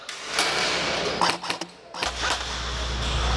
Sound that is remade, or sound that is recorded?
recorded